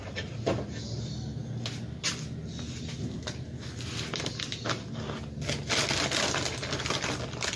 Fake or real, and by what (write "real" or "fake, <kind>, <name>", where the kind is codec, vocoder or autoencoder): real